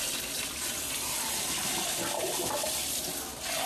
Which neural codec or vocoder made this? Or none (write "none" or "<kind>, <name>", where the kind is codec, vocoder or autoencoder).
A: none